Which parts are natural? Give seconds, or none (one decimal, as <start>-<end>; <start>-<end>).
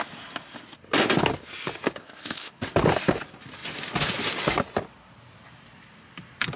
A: 0.0-2.0; 2.5-6.6